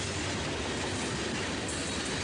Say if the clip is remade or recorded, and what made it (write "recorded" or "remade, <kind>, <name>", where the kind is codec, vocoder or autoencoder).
recorded